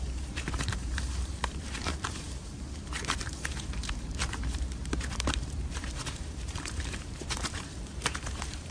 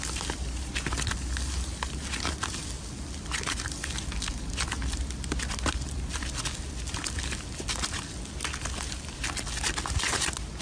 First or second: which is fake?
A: first